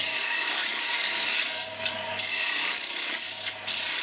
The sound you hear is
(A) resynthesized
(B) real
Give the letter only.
A